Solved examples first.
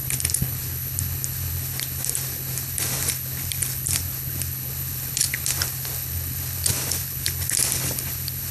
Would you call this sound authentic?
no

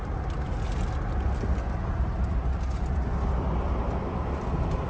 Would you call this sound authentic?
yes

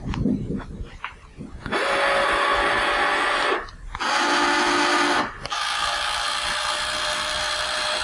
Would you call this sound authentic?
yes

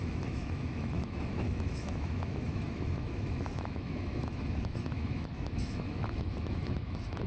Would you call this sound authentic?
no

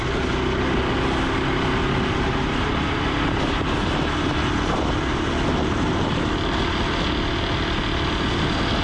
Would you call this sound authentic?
yes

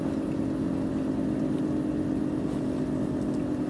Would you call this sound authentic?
yes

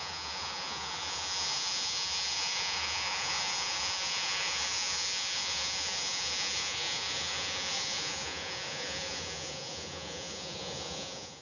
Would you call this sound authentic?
no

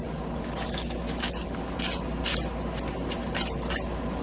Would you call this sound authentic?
yes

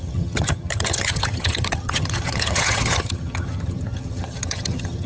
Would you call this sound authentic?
no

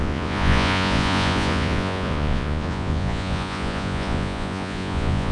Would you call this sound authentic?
no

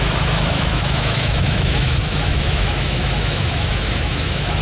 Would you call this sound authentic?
no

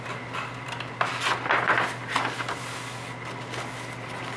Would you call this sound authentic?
yes